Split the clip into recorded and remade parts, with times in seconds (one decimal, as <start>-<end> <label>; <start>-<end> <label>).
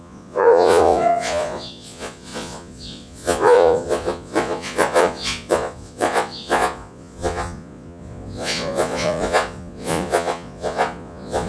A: 0.0-11.5 remade